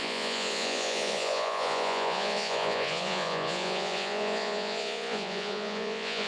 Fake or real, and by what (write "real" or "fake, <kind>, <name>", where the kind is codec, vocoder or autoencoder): fake, vocoder, Vocos